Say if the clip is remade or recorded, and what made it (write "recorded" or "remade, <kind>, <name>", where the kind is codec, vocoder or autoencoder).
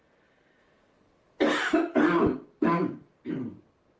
recorded